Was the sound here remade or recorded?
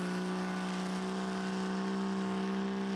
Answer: recorded